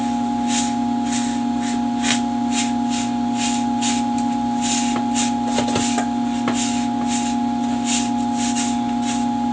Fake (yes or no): no